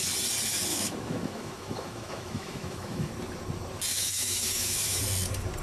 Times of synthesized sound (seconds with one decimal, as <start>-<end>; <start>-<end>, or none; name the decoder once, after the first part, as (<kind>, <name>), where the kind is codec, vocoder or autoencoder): 0.7-3.1 (autoencoder, DAC-VAE); 3.9-5.0